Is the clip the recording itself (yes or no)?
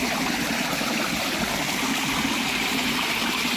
yes